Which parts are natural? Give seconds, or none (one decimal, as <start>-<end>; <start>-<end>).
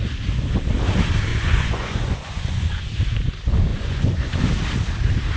0.0-1.3; 2.8-3.7; 4.5-5.4